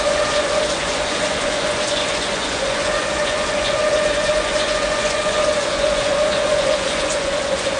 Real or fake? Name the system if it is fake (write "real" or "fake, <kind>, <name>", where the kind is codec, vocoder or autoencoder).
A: fake, vocoder, Vocos